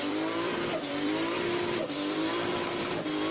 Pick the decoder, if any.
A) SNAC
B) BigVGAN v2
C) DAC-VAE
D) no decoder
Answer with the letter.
B